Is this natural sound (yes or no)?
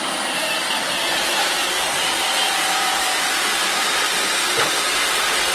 no